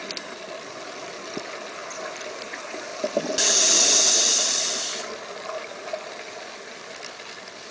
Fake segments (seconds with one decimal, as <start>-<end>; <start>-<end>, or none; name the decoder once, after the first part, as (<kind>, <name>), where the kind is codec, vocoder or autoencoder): none

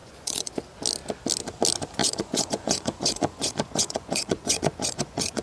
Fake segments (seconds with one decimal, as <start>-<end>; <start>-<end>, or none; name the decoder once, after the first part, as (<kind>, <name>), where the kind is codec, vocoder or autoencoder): 0.0-0.6 (vocoder, Vocos); 2.0-5.4

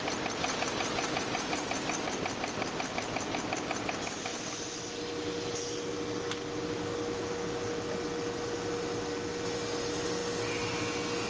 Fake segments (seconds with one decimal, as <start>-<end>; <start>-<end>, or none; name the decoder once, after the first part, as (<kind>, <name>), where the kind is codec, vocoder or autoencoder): none

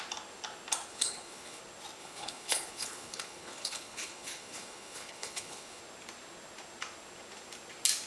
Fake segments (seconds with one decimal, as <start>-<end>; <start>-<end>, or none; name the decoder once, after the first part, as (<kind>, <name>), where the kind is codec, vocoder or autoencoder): 0.9-1.6 (codec, HILCodec); 2.0-5.8